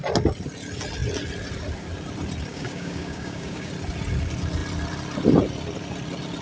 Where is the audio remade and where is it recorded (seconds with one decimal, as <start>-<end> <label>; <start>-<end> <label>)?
0.0-2.5 recorded; 2.5-3.7 remade; 3.7-6.4 recorded